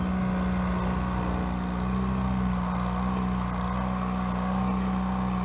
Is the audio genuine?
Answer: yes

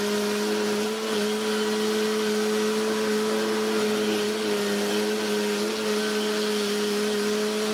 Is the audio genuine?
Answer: yes